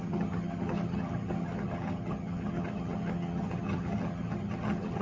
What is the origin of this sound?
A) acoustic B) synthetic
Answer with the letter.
B